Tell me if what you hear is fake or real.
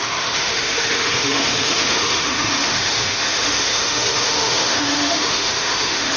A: fake